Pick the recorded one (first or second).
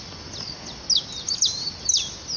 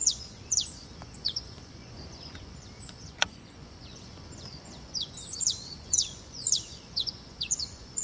first